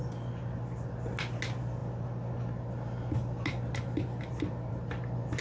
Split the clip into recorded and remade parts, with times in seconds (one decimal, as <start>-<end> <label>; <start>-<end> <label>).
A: 0.0-5.4 recorded